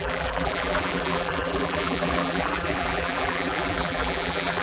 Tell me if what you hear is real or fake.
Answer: fake